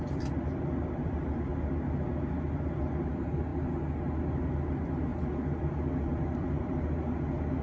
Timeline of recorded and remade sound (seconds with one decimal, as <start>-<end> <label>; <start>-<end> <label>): 0.0-1.5 remade; 1.5-2.8 recorded; 2.8-3.5 remade; 3.5-4.2 recorded; 4.2-7.6 remade

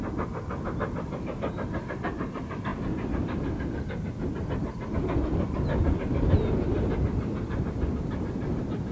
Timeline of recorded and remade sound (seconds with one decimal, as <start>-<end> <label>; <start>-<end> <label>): 0.0-8.9 recorded

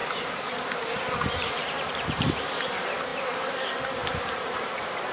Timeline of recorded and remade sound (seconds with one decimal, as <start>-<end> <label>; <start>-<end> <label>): 0.0-5.1 remade